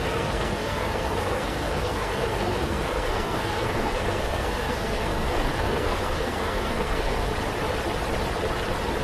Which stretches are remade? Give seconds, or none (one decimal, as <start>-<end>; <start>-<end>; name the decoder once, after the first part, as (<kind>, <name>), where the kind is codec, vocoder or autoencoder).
0.0-7.3 (codec, SNAC)